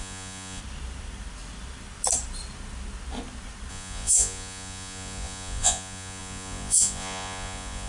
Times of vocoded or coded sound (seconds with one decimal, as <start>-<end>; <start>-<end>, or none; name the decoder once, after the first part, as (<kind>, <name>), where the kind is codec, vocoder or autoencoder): 0.0-0.6 (vocoder, Vocos); 3.7-7.9